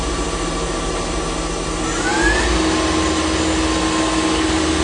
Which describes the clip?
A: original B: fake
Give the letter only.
A